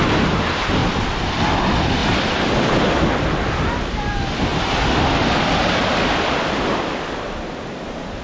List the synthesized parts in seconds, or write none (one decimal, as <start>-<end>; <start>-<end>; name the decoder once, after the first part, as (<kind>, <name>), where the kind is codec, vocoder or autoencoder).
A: 0.8-1.4 (vocoder, BigVGAN v2); 2.0-3.5; 4.5-5.0